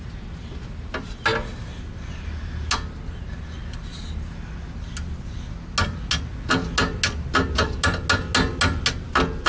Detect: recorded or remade recorded